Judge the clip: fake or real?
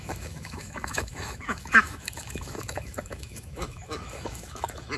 fake